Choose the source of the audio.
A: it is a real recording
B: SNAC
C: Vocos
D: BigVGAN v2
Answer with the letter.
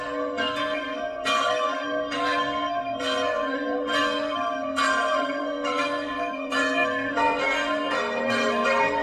B